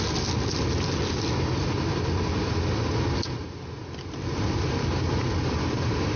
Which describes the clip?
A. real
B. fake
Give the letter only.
A